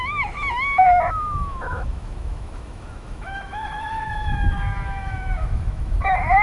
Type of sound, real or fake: fake